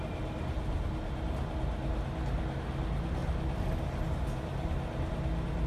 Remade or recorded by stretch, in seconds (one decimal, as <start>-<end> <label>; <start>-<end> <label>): 0.0-5.7 recorded